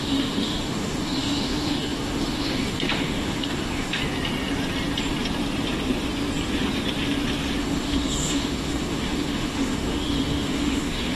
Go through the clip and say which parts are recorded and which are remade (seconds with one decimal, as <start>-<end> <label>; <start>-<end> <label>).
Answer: 0.0-4.0 remade; 4.0-7.6 recorded; 7.6-11.2 remade